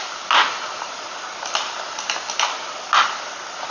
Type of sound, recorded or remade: recorded